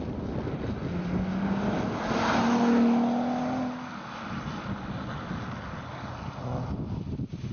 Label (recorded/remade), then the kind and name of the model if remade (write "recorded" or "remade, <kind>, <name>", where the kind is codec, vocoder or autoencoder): recorded